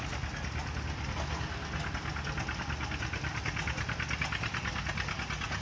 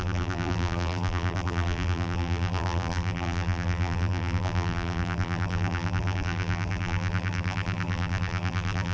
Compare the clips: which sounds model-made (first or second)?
second